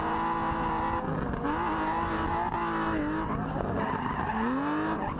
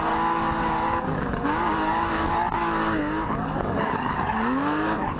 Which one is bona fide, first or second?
first